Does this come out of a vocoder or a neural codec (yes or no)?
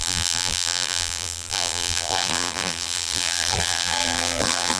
yes